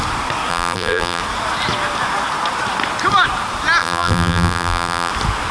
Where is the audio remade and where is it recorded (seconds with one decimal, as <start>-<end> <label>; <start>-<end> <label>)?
0.0-0.5 recorded; 0.5-1.2 remade; 1.2-3.8 recorded; 3.8-5.1 remade; 5.1-5.5 recorded